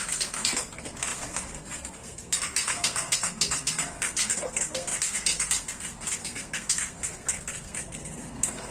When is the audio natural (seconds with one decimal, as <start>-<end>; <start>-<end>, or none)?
none